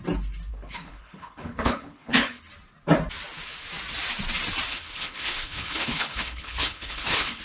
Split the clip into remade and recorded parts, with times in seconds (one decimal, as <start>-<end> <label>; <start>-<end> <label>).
0.0-0.5 recorded; 0.5-2.4 remade; 2.4-4.7 recorded; 4.7-7.4 remade